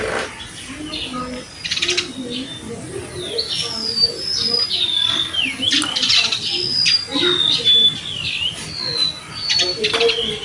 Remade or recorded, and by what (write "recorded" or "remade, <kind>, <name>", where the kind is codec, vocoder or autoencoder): recorded